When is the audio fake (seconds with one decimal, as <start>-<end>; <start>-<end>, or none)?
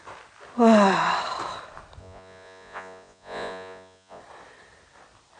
2.0-4.2